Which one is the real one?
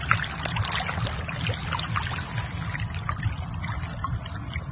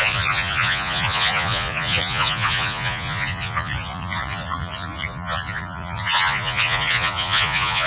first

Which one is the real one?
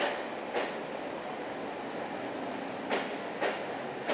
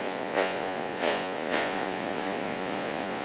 first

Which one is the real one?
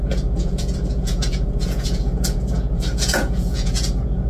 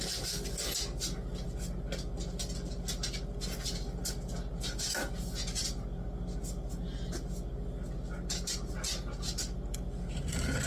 second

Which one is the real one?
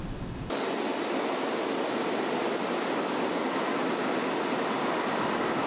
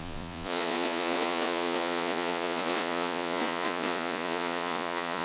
first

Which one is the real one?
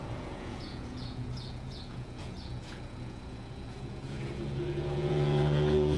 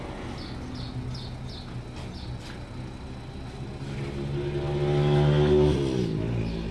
second